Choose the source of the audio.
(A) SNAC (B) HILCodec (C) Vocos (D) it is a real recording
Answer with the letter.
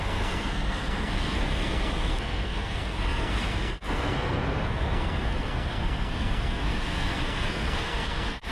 A